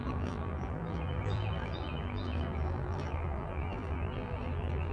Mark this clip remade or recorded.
remade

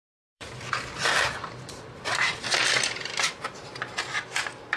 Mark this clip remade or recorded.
remade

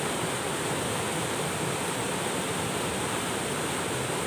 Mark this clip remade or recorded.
remade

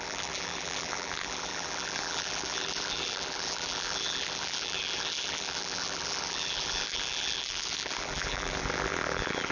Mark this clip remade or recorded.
remade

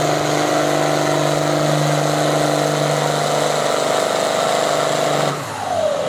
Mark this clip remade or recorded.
recorded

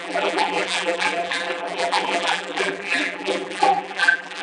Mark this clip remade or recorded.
remade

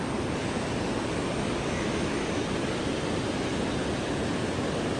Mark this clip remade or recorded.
recorded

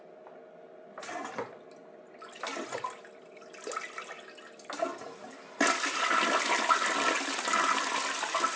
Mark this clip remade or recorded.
recorded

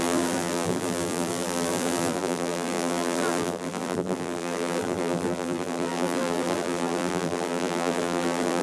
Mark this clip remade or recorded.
remade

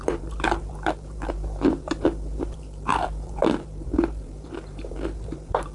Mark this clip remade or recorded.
remade